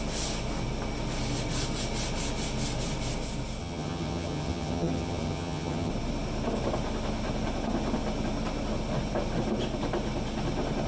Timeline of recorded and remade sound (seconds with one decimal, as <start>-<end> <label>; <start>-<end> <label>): 0.0-3.6 recorded; 3.6-5.9 remade; 5.9-10.9 recorded